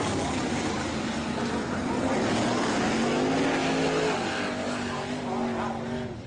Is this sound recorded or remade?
recorded